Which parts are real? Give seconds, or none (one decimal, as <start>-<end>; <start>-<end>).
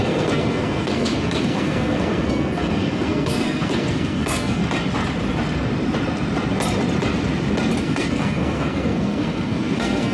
4.6-7.8